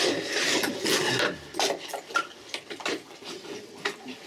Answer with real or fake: real